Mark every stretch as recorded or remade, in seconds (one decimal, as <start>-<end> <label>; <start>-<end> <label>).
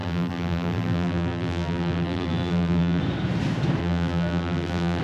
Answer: 0.0-3.0 remade; 3.0-3.8 recorded; 3.8-5.0 remade